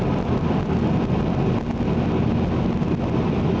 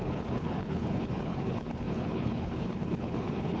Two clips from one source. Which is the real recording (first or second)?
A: first